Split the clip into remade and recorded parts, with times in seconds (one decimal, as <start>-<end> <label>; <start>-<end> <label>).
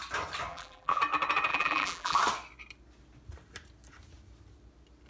0.0-0.5 recorded; 0.5-1.0 remade; 1.0-1.5 recorded; 1.5-2.2 remade; 2.2-5.1 recorded